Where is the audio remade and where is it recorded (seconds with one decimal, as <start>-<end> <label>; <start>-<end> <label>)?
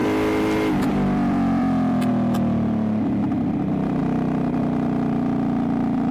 0.0-2.1 remade; 2.1-3.6 recorded; 3.6-6.1 remade